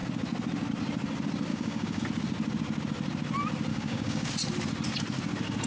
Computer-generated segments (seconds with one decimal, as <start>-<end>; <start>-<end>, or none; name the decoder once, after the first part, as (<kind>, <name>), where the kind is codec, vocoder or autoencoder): 1.5-2.0 (codec, DAC); 3.7-4.3

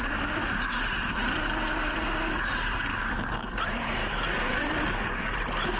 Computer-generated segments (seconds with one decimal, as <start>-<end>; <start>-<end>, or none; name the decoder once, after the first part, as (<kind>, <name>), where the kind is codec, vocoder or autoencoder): 2.9-3.6 (codec, DAC); 4.0-5.3